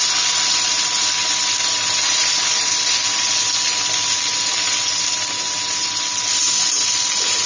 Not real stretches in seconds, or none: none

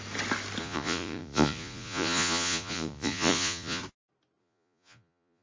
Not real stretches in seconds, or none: 0.6-3.8; 4.4-5.4

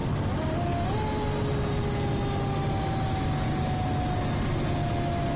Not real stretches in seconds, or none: none

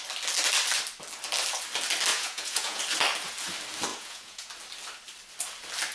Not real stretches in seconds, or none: 2.1-2.8; 3.9-4.5

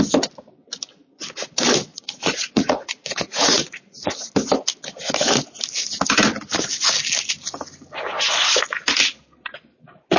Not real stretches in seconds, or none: 1.9-4.1

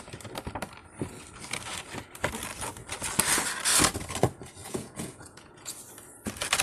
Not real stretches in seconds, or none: 4.6-5.8

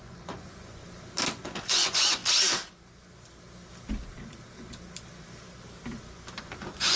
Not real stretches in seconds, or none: 0.0-0.8; 1.6-2.2; 6.4-7.0

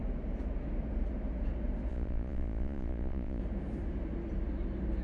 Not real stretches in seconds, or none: 1.9-3.4